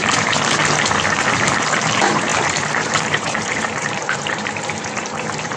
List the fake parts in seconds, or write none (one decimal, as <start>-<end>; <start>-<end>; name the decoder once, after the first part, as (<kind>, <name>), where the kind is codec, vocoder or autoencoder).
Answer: 0.0-0.6 (vocoder, BigVGAN v2); 1.2-5.6

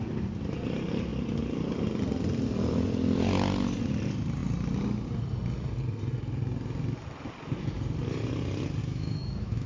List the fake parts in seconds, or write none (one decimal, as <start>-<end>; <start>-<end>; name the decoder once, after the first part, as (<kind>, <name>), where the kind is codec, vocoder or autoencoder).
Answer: 8.8-9.7 (autoencoder, DAC-VAE)

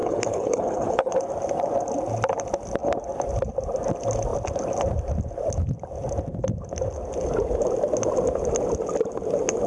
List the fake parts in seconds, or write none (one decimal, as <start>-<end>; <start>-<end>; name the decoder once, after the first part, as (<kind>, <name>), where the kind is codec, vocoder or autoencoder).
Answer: 0.0-1.1 (codec, HILCodec)

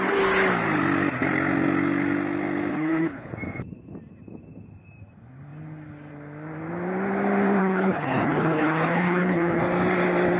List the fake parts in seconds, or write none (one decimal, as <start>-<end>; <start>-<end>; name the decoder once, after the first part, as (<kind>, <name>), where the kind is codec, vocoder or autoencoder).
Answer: 2.7-3.3 (codec, HILCodec); 7.6-9.6

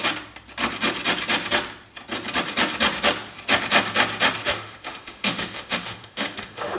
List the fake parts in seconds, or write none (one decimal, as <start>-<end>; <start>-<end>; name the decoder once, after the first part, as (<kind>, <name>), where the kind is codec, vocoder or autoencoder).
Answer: 4.4-6.8 (autoencoder, DAC-VAE)